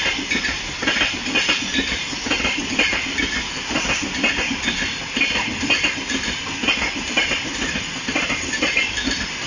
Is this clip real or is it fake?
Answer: real